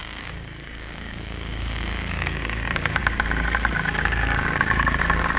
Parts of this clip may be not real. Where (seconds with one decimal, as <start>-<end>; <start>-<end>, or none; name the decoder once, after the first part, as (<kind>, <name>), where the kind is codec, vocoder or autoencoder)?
0.0-5.4 (codec, DAC)